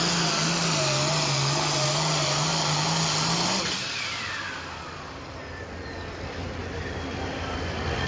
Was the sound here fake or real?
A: real